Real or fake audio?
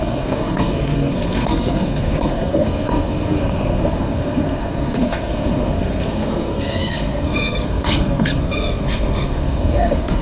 fake